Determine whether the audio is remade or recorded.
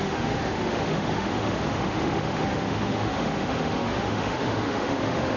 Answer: remade